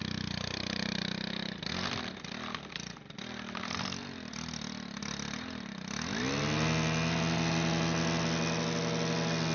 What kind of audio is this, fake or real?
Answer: real